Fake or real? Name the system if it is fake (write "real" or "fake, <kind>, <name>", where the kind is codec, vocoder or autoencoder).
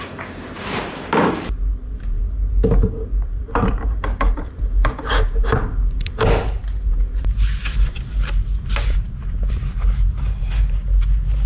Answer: fake, vocoder, BigVGAN v2